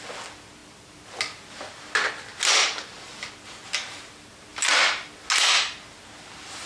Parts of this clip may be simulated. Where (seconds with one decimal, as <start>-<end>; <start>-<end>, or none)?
none

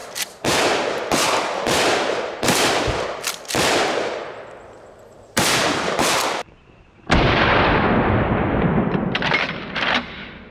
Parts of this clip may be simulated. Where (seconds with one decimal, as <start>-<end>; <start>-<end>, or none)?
1.4-10.5

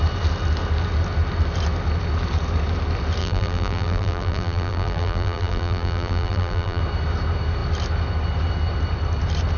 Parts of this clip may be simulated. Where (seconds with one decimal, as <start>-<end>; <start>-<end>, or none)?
3.2-6.8

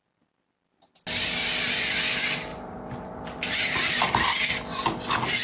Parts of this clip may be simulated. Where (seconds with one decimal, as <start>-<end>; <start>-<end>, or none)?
2.5-3.9

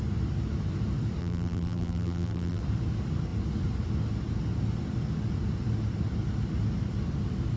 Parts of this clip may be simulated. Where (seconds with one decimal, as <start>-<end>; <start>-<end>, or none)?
1.2-2.6